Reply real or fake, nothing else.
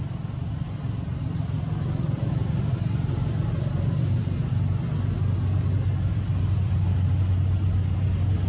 real